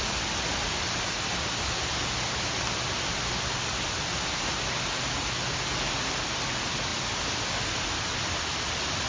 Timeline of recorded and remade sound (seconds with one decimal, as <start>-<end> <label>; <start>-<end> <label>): 0.0-9.1 recorded